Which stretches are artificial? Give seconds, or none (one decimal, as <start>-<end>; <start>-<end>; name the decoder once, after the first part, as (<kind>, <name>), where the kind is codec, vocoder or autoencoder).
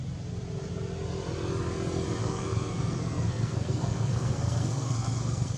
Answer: 2.2-5.6 (codec, SNAC)